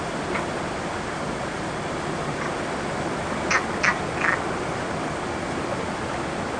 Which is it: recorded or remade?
recorded